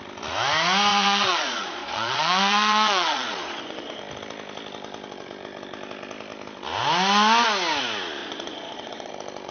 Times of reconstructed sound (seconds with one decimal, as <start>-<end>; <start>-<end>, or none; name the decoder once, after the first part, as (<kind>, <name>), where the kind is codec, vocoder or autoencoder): 0.9-4.0 (vocoder, Vocos); 8.2-9.1